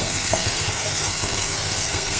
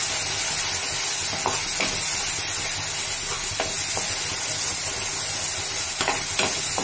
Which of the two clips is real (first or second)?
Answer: second